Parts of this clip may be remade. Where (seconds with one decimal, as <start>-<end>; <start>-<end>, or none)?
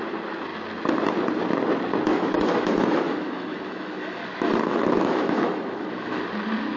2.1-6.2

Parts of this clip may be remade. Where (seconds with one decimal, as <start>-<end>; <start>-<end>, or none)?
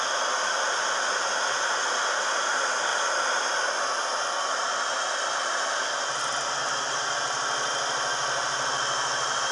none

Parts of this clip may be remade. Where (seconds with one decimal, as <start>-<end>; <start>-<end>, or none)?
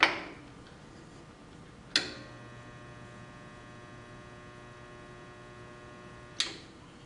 none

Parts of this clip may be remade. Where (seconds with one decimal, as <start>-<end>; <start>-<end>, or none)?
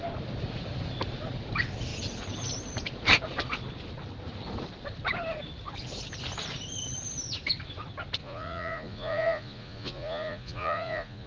8.2-11.3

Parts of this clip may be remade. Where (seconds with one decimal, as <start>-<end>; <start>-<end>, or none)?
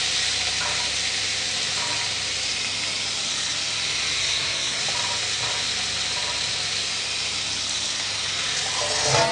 4.2-4.8